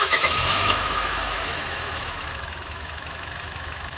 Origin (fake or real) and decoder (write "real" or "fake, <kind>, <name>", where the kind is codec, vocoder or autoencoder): fake, autoencoder, DAC-VAE